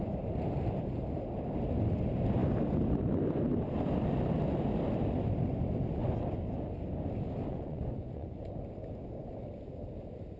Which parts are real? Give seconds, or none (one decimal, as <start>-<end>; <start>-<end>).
0.0-7.5; 8.5-10.4

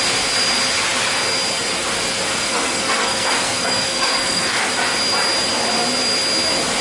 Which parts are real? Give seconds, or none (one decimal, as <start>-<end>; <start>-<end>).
0.0-2.3; 4.7-6.8

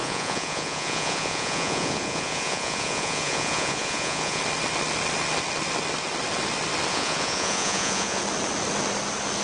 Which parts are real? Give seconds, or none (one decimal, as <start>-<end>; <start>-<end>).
4.4-6.9; 8.2-9.4

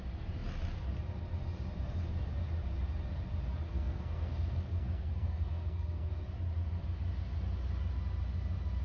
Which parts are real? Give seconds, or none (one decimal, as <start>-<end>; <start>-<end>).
0.0-3.7; 6.1-8.8